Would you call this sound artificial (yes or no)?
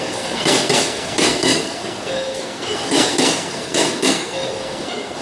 yes